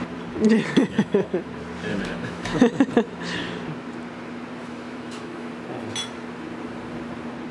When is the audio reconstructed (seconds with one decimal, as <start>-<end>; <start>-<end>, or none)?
0.8-1.5; 1.9-2.8; 4.6-5.5